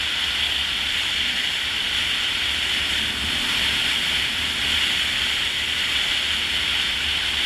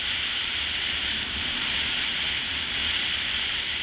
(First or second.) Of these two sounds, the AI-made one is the second